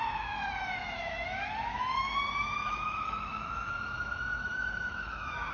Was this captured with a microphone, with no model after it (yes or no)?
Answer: no